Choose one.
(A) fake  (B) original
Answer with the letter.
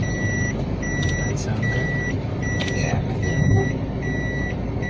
B